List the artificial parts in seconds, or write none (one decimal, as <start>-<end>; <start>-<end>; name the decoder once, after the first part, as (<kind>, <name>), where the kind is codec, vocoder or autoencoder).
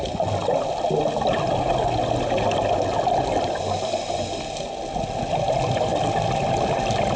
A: none